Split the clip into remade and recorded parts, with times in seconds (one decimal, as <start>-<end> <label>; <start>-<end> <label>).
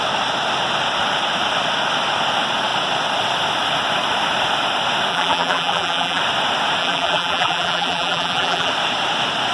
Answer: 0.0-5.1 recorded; 5.1-6.2 remade; 6.2-6.8 recorded; 6.8-8.7 remade; 8.7-9.5 recorded